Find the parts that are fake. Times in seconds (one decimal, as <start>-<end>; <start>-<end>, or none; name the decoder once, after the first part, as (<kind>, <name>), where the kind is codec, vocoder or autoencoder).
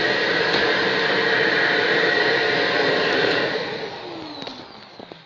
3.2-4.0 (vocoder, Vocos)